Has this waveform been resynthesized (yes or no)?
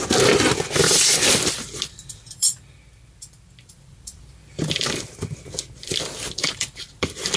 yes